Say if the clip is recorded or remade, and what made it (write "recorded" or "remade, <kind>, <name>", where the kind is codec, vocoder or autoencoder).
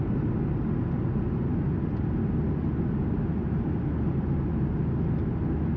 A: recorded